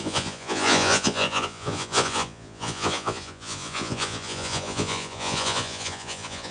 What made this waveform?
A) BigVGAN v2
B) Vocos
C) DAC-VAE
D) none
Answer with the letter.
B